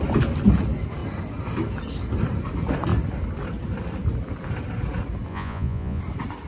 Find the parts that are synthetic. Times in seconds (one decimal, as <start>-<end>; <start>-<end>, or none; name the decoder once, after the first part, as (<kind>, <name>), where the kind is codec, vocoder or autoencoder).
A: 5.3-6.0 (vocoder, Vocos)